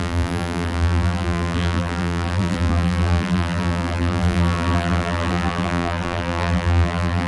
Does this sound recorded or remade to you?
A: remade